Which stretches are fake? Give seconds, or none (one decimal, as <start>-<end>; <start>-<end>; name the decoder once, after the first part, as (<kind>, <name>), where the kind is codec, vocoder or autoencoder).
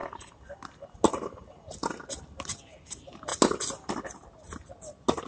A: none